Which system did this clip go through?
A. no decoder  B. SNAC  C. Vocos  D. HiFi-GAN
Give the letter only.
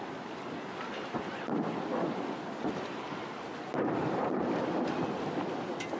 A